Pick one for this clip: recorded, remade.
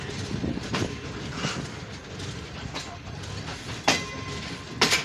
recorded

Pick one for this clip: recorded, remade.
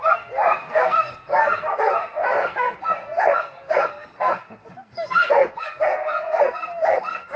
remade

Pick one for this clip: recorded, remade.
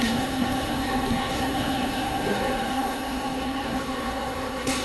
remade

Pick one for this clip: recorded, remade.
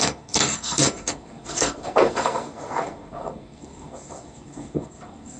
remade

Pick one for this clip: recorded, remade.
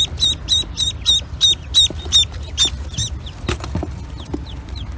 recorded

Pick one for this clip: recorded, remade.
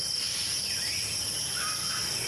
recorded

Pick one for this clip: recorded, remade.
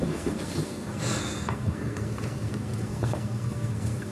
remade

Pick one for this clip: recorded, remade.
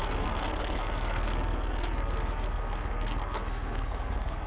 remade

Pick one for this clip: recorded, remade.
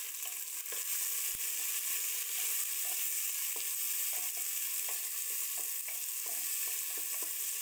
recorded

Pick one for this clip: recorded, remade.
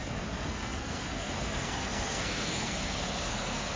remade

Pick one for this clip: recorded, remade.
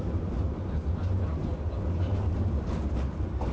recorded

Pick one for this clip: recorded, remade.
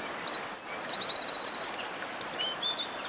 recorded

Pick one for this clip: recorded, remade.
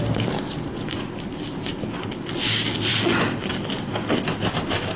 recorded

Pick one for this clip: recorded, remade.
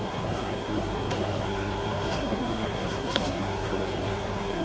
remade